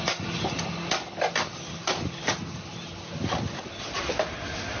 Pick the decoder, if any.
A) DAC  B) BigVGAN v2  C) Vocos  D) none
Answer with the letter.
D